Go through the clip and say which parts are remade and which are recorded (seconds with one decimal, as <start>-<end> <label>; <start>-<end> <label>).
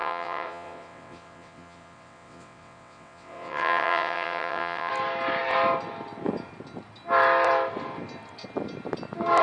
0.0-4.9 remade; 4.9-9.4 recorded